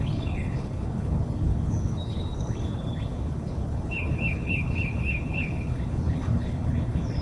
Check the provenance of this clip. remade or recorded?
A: remade